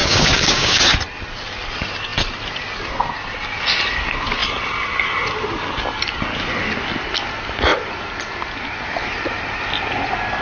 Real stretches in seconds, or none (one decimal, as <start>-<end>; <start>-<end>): 0.8-10.4